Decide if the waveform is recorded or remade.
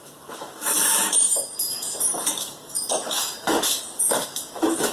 remade